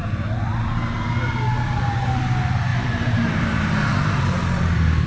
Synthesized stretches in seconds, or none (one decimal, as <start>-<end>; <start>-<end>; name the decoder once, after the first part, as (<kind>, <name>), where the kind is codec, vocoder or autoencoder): 2.7-4.2 (vocoder, BigVGAN v2)